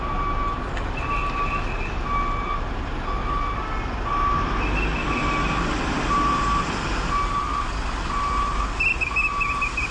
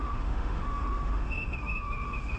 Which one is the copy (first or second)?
second